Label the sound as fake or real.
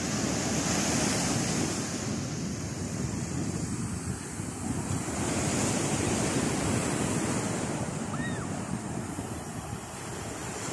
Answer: real